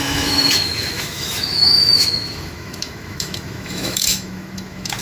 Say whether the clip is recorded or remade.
remade